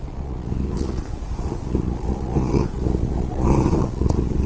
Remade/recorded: remade